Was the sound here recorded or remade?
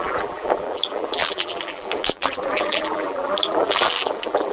remade